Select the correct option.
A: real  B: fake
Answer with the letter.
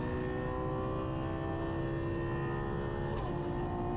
A